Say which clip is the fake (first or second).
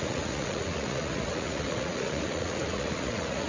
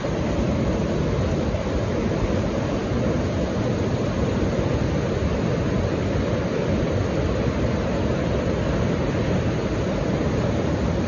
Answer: first